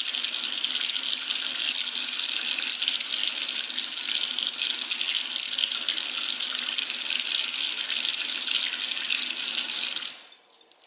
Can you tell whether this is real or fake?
real